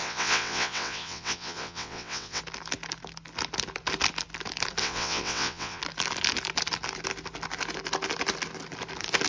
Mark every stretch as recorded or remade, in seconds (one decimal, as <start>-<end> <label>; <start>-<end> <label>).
0.0-2.4 remade; 2.4-4.8 recorded; 4.8-5.8 remade; 5.8-9.3 recorded